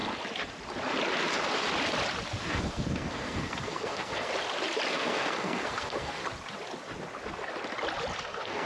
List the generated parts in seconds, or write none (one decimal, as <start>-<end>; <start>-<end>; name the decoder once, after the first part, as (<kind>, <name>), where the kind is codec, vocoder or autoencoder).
2.5-4.3 (codec, SNAC); 4.9-6.2; 8.2-8.7